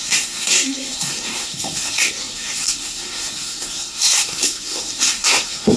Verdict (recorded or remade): remade